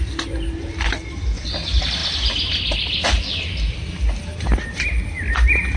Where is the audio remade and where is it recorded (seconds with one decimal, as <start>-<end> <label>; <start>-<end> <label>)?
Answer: 0.0-5.8 recorded